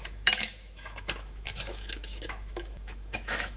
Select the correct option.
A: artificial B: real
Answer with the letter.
A